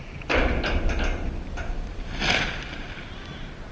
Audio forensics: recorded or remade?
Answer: recorded